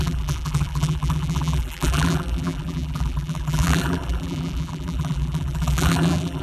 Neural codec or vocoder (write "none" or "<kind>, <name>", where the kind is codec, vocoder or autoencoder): vocoder, BigVGAN v2